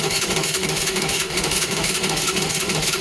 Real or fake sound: fake